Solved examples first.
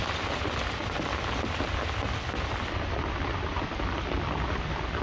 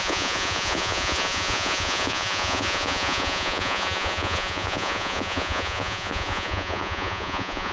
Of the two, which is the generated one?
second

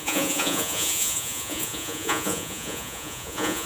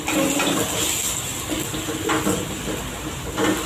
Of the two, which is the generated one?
first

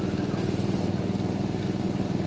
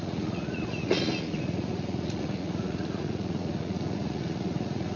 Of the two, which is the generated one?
second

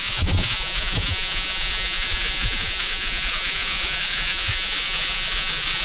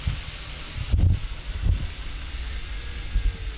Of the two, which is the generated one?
first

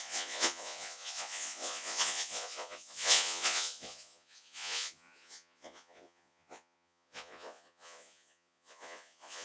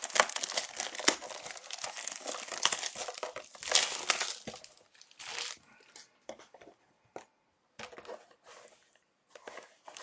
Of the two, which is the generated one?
first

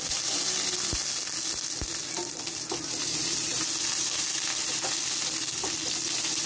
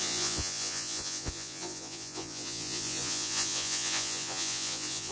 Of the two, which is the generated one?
second